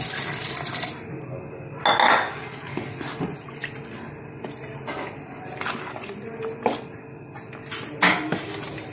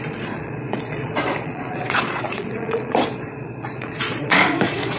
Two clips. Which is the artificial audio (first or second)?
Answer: second